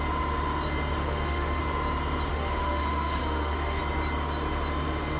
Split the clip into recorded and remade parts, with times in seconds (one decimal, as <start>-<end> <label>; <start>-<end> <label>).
0.0-1.0 recorded; 1.0-1.6 remade; 1.6-2.3 recorded; 2.3-3.8 remade; 3.8-5.2 recorded